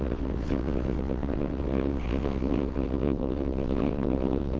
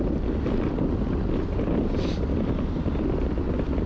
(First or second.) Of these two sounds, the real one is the second